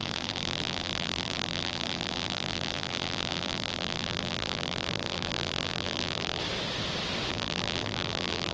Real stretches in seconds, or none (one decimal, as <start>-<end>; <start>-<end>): 6.4-7.3